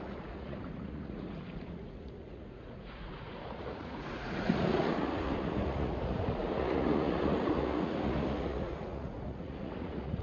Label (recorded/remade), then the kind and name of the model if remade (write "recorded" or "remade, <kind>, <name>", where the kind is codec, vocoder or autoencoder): remade, vocoder, Vocos